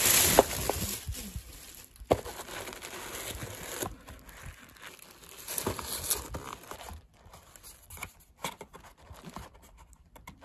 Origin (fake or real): real